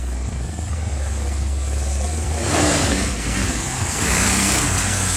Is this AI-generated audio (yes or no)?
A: yes